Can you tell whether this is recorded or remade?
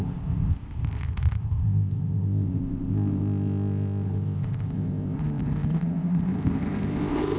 remade